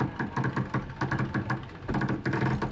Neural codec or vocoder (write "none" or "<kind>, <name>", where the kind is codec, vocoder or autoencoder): none